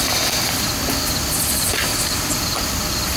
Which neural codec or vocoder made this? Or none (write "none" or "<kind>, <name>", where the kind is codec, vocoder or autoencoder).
none